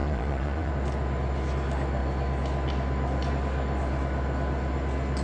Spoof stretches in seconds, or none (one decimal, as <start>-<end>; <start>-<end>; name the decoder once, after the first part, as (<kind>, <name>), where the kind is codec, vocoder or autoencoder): 0.0-0.7 (vocoder, Vocos)